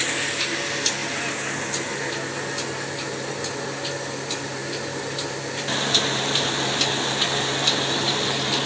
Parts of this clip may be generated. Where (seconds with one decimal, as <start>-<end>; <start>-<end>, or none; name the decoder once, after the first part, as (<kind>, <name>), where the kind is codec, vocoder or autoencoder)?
none